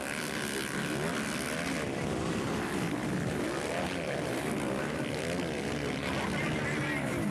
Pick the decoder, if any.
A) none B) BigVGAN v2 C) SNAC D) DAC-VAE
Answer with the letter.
A